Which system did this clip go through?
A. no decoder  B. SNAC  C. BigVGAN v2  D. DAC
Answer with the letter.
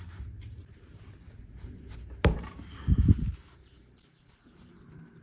C